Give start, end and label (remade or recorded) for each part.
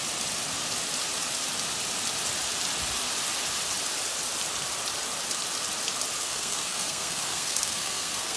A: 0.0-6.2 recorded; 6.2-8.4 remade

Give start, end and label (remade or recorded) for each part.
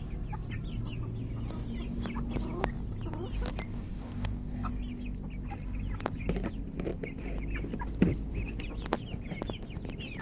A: 0.0-3.9 recorded; 3.9-4.7 remade; 4.7-10.2 recorded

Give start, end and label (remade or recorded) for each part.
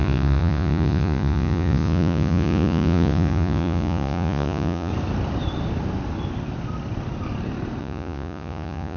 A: 0.0-4.9 remade; 4.9-7.8 recorded; 7.8-9.0 remade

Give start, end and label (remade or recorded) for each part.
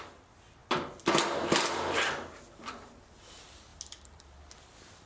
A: 0.0-5.1 recorded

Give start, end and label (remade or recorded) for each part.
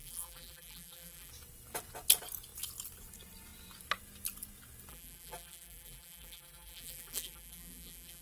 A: 0.0-1.3 remade; 1.3-4.9 recorded; 4.9-8.2 remade